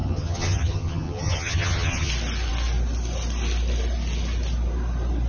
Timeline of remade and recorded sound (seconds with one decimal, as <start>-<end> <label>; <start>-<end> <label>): 0.0-2.1 remade; 2.1-5.3 recorded